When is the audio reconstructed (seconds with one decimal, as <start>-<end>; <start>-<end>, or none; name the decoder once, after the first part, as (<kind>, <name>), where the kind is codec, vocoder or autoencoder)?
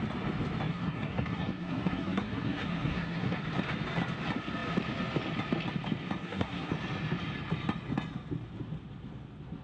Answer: 0.7-3.4 (codec, SNAC); 6.2-6.7